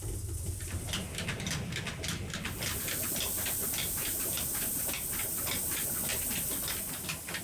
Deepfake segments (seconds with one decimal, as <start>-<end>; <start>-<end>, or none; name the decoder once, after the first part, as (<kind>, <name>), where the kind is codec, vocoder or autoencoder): 3.8-4.4 (vocoder, BigVGAN v2)